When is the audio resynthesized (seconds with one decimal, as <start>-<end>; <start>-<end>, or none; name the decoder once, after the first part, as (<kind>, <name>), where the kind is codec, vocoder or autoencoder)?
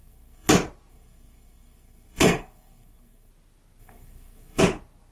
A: 0.0-0.5 (codec, SNAC); 0.9-3.3; 3.8-4.6